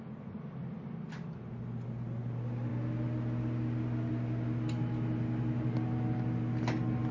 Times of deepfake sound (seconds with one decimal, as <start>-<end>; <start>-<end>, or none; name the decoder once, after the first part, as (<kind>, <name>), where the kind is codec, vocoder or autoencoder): none